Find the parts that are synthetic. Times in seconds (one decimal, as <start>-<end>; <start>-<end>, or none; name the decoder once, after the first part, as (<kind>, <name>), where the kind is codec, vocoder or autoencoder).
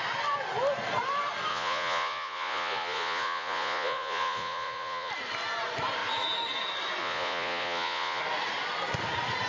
1.5-5.1 (vocoder, Vocos); 7.0-8.2